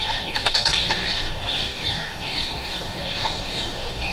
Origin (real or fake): fake